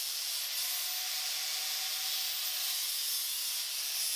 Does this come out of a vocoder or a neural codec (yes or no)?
no